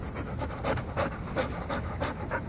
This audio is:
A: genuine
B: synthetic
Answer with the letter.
A